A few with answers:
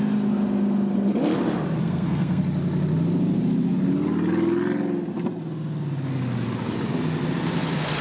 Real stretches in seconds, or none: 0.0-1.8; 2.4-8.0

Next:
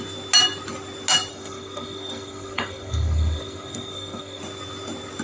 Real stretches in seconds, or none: 0.0-1.3; 4.4-5.2

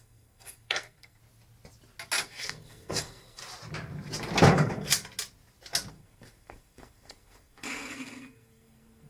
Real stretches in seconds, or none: 1.2-2.2; 3.4-4.5; 4.9-5.9

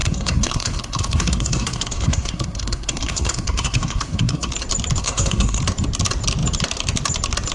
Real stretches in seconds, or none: 4.5-5.0; 5.6-7.5

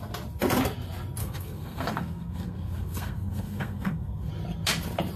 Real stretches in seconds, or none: 0.0-1.2; 4.3-5.2

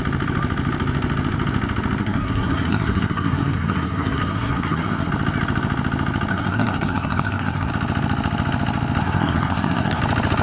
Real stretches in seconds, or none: 0.0-2.0; 5.1-6.3; 7.7-9.0; 10.0-10.4

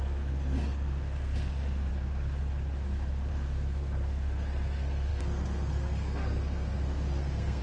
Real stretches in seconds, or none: 1.9-3.3

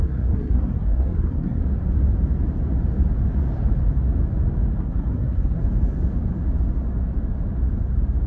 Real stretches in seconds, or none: 1.6-4.8; 5.6-8.3